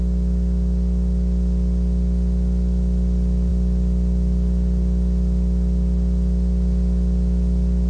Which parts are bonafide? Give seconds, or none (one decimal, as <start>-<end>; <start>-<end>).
0.0-7.9

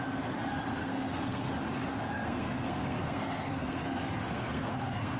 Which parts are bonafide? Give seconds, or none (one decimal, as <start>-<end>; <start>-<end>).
0.0-0.8; 1.5-1.9

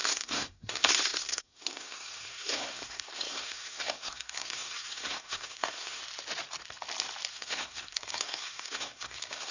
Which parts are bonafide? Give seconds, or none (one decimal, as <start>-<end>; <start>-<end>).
6.0-7.3

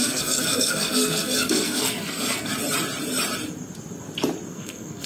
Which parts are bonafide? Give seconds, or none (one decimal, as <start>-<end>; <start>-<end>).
2.5-4.5

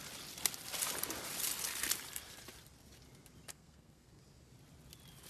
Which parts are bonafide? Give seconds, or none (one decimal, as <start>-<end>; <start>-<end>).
0.0-3.5; 4.2-5.3